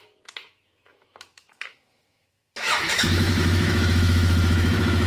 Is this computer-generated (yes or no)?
yes